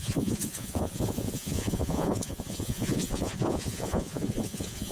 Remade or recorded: remade